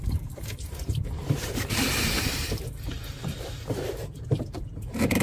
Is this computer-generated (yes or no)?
yes